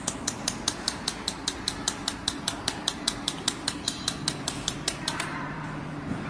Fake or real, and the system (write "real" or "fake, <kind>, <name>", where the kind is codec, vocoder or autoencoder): fake, vocoder, BigVGAN v2